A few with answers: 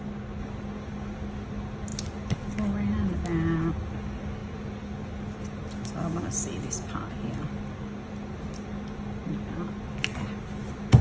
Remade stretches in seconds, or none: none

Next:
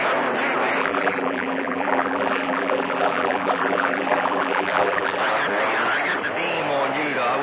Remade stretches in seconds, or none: 0.8-5.2 (vocoder, BigVGAN v2)

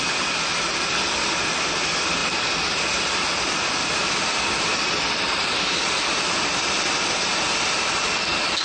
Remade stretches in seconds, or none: none

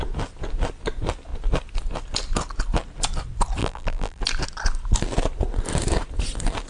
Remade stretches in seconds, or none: 3.6-4.2 (vocoder, BigVGAN v2)

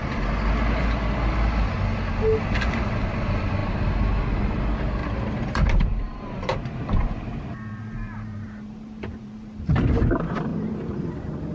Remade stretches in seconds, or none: 5.0-9.6 (vocoder, BigVGAN v2); 10.5-11.1

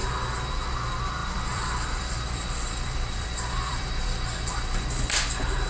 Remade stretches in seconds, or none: 1.2-4.6 (vocoder, BigVGAN v2)

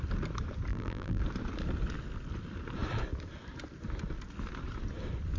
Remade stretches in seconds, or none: 0.7-1.2 (vocoder, BigVGAN v2)